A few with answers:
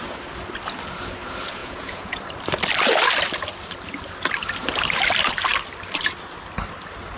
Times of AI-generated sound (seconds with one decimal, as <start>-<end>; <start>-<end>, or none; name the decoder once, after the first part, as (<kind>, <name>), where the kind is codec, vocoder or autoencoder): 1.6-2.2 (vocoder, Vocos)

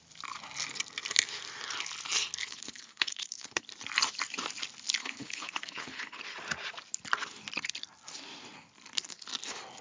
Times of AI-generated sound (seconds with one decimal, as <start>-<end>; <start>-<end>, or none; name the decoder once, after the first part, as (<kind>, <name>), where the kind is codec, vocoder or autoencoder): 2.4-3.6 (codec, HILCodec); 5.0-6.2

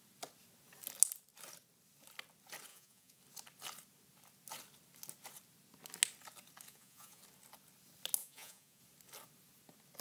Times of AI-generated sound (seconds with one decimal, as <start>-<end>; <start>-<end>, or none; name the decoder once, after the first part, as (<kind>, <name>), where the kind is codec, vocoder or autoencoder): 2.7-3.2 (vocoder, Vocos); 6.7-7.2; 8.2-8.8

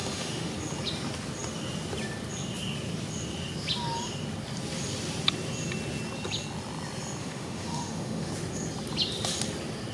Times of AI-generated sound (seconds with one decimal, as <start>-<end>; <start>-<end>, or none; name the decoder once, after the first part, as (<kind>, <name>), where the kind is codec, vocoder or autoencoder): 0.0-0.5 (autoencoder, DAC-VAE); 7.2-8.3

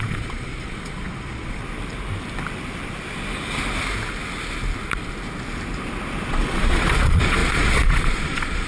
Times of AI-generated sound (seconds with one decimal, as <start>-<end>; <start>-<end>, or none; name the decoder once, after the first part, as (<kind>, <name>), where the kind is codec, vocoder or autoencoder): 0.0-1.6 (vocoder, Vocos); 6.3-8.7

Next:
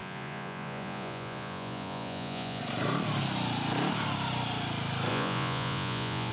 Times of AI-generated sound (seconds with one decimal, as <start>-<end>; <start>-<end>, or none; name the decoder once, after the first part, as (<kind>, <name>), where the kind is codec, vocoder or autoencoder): 0.0-2.6 (vocoder, Vocos); 5.1-6.3